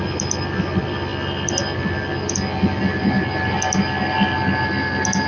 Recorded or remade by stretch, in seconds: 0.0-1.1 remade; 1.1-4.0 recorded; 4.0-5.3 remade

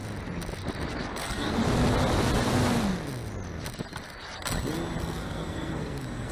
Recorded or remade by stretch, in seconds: 0.0-1.2 recorded; 1.2-1.6 remade; 1.6-5.0 recorded; 5.0-6.3 remade

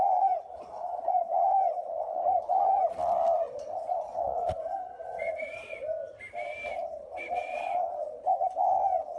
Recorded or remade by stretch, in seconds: 0.0-5.9 remade; 5.9-6.9 recorded; 6.9-9.2 remade

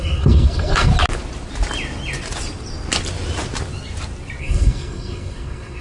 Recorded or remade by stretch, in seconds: 0.0-0.9 remade; 0.9-4.4 recorded; 4.4-5.8 remade